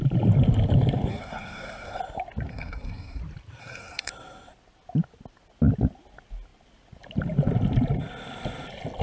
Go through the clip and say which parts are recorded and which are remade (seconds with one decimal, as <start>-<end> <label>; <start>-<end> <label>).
0.0-1.1 recorded; 1.1-2.0 remade; 2.0-2.5 recorded; 2.5-3.2 remade; 3.2-3.6 recorded; 3.6-4.1 remade; 4.1-9.0 recorded